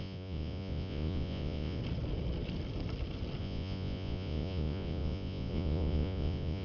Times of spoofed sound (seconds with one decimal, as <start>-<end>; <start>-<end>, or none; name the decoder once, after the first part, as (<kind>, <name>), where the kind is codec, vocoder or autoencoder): 0.0-1.8 (vocoder, Vocos); 3.4-6.6